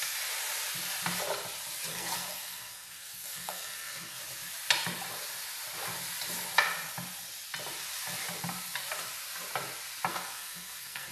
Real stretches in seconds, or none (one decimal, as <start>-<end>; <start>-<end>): 0.0-1.9; 4.2-10.1